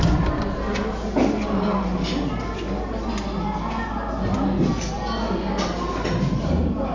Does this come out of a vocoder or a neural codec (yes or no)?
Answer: no